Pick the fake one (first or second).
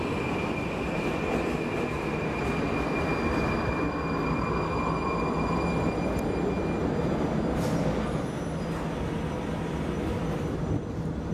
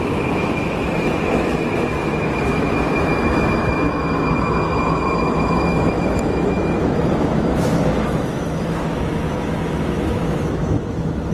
second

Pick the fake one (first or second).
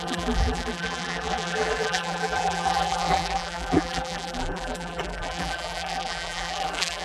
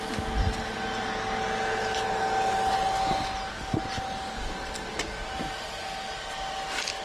first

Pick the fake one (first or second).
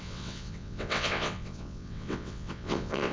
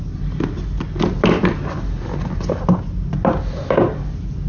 first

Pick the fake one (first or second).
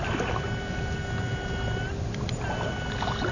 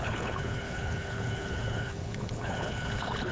second